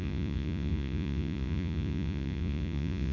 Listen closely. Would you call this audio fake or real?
fake